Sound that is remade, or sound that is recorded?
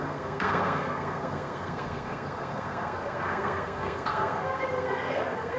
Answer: remade